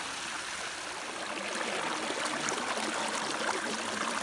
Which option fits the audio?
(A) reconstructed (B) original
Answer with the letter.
B